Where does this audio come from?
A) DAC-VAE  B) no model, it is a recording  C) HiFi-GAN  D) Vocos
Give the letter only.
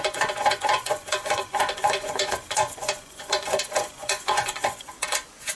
D